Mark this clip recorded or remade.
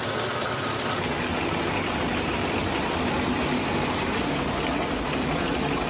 recorded